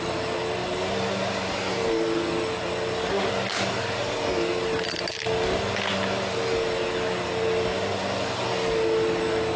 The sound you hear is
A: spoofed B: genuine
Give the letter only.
B